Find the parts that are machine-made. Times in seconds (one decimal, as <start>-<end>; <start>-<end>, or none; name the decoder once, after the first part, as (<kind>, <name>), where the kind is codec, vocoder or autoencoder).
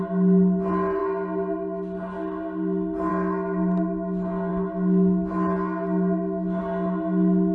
none